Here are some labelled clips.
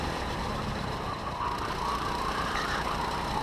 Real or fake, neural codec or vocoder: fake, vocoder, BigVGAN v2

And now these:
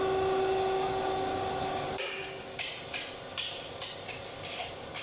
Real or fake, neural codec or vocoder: real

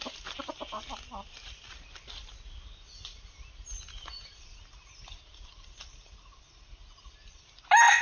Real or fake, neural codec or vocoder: real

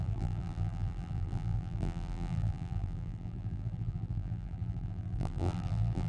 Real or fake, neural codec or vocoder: fake, vocoder, BigVGAN v2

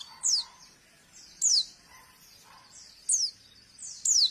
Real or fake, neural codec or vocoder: real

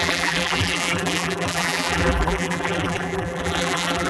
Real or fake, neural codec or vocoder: fake, vocoder, BigVGAN v2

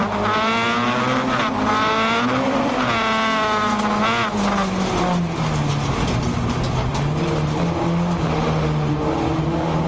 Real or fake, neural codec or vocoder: real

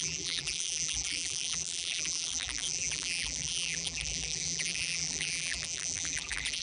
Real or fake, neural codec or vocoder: fake, vocoder, BigVGAN v2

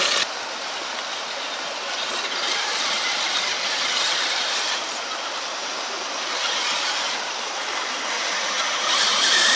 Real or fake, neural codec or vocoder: real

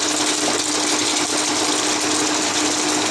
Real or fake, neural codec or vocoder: real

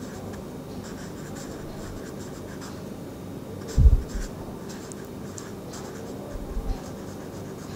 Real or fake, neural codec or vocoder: real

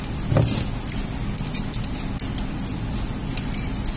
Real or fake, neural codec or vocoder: real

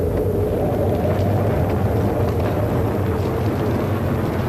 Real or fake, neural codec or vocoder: real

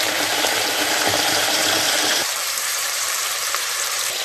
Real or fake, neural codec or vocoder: fake, vocoder, BigVGAN v2